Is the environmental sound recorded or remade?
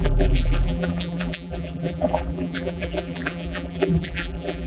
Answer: remade